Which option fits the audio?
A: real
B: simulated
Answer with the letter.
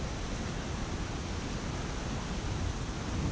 A